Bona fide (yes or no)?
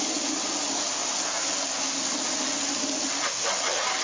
yes